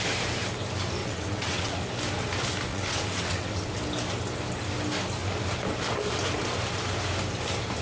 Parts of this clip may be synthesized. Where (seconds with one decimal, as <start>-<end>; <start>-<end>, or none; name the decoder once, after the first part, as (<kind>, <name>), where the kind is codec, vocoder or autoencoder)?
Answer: 1.0-1.8 (vocoder, WaveNeXt); 2.7-3.7